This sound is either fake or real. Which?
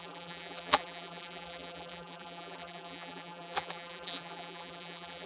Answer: fake